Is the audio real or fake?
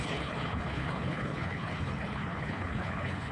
fake